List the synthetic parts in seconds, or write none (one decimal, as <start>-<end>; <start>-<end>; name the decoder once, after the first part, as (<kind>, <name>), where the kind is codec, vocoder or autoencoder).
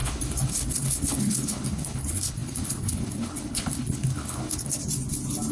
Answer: 0.0-4.8 (codec, HILCodec)